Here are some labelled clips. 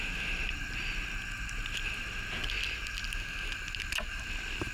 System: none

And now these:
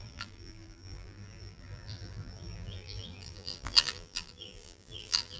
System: vocoder, BigVGAN v2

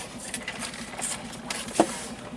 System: none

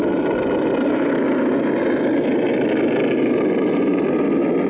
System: none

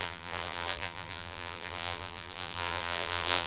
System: vocoder, BigVGAN v2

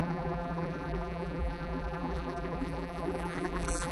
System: vocoder, BigVGAN v2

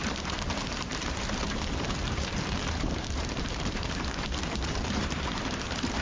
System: vocoder, BigVGAN v2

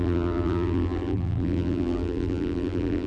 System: vocoder, BigVGAN v2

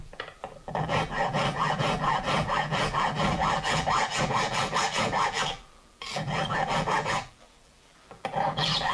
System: vocoder, BigVGAN v2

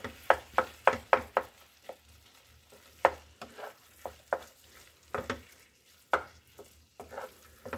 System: none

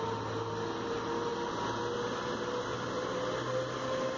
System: none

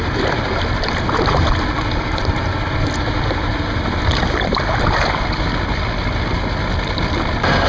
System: vocoder, BigVGAN v2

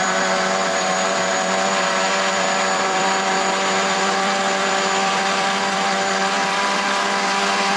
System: vocoder, BigVGAN v2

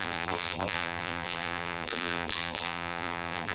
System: vocoder, BigVGAN v2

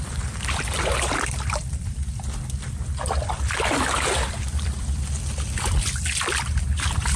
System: vocoder, BigVGAN v2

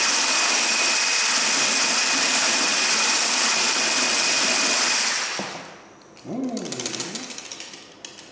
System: none